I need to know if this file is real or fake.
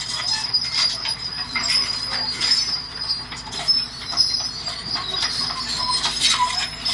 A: fake